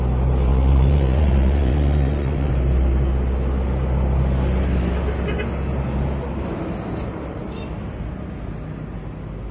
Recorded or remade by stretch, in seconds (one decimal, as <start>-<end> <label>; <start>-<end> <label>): 0.0-0.5 recorded; 0.5-2.5 remade; 2.5-9.5 recorded